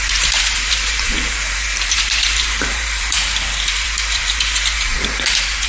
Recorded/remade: remade